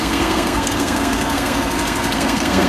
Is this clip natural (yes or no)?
no